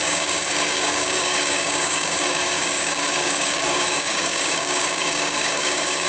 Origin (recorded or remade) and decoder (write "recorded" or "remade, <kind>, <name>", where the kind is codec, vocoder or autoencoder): remade, codec, DAC